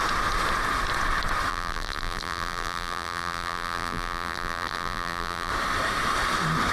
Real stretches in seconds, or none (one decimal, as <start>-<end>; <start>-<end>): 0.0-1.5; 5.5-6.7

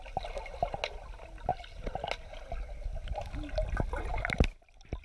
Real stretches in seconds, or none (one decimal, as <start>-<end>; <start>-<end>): 0.0-5.0

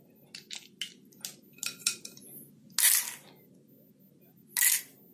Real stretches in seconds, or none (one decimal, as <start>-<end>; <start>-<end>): 0.0-5.1

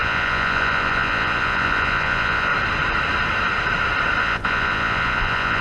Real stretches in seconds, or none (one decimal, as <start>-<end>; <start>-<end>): 2.5-4.2

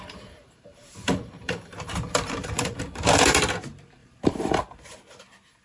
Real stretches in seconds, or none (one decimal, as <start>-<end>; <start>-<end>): 2.8-4.0; 4.6-5.6